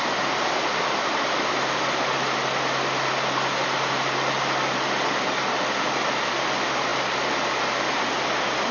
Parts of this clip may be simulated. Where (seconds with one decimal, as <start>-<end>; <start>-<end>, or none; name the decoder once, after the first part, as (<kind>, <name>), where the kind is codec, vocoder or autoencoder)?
none